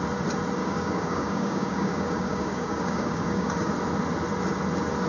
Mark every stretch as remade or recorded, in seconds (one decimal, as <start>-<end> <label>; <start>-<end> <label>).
0.0-0.6 recorded; 0.6-3.7 remade; 3.7-5.1 recorded